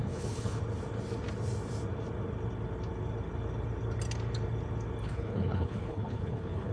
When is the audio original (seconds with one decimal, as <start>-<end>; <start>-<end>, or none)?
0.6-5.0